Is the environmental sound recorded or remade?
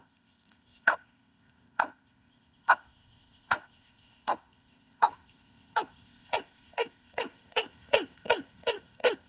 remade